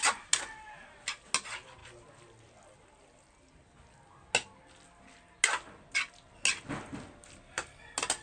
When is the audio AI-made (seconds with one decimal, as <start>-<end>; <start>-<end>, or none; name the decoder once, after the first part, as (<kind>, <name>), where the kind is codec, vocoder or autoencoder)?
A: none